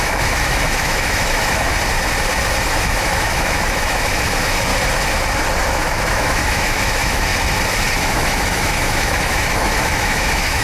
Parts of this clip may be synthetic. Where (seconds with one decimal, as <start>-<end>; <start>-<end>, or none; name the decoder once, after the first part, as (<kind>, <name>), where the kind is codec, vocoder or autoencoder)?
0.0-1.7 (autoencoder, DAC-VAE); 2.6-4.7; 5.7-7.3; 7.9-10.6